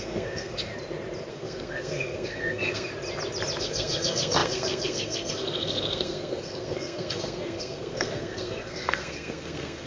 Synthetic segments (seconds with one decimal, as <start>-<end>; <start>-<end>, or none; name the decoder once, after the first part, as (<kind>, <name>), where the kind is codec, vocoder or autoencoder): 0.0-0.7 (codec, SNAC); 1.3-2.9; 3.6-9.9